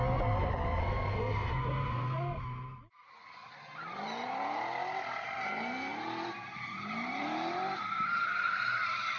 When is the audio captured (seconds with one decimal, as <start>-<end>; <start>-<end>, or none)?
0.0-0.8; 2.4-9.2